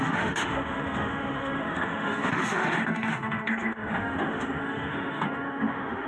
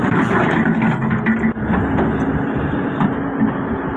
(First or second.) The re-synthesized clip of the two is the first